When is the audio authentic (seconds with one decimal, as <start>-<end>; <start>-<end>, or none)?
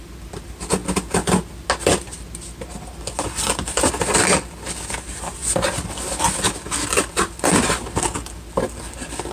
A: 0.0-9.3